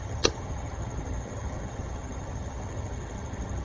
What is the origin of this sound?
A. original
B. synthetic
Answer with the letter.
B